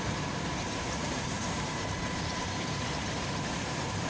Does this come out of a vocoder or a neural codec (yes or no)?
yes